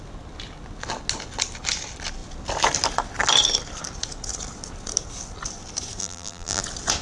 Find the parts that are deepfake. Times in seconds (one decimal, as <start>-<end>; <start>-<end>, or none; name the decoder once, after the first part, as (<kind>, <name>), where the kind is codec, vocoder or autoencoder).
6.0-6.6 (vocoder, BigVGAN v2)